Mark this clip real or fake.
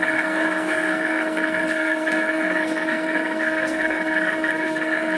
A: fake